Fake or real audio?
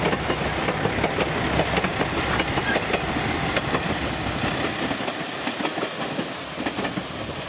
real